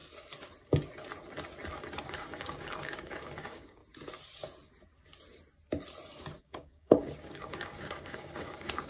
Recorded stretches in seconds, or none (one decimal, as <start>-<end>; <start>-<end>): 0.0-2.1; 3.8-6.4